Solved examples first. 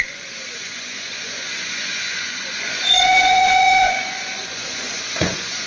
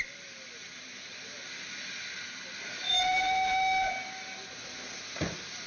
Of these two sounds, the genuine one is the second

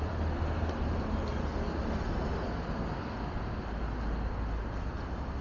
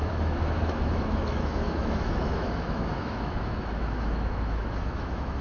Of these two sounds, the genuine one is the first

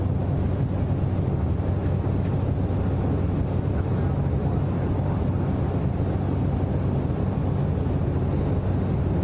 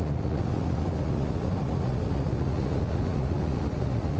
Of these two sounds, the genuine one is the first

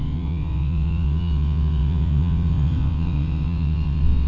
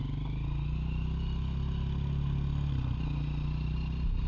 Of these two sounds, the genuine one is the second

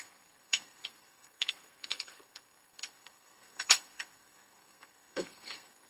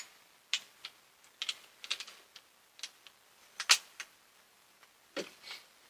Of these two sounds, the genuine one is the second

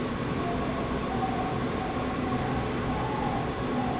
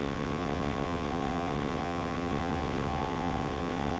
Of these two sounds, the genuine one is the first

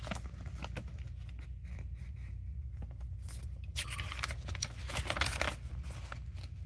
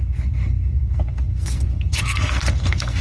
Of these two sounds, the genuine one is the first